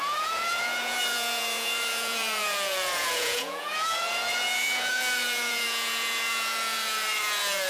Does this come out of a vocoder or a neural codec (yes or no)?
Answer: yes